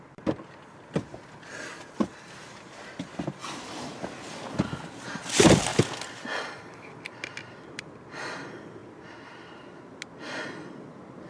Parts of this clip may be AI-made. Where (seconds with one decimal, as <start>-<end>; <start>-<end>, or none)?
0.0-5.7; 7.5-8.8